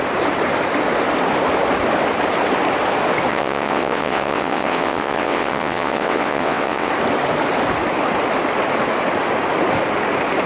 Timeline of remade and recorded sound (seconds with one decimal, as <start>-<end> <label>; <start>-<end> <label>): 0.0-3.3 recorded; 3.3-6.9 remade; 6.9-10.5 recorded